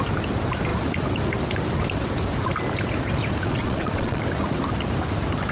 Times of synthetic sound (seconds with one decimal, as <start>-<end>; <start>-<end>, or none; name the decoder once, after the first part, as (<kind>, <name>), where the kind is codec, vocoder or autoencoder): 3.5-4.2 (vocoder, Vocos)